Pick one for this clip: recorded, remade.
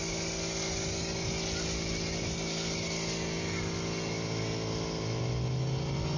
recorded